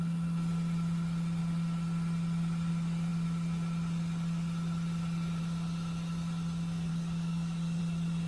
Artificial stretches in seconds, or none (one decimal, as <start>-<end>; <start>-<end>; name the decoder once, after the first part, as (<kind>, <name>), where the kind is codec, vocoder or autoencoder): 6.9-7.8 (codec, DAC)

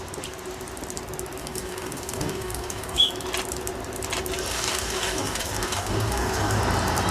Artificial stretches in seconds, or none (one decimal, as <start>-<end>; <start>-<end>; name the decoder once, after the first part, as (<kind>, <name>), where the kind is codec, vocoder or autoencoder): 1.4-3.1 (codec, DAC); 4.5-6.6